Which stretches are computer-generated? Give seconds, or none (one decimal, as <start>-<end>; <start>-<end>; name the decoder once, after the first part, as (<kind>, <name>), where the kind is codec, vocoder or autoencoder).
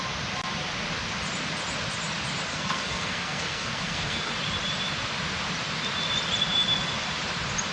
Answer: 2.5-4.3 (codec, SNAC)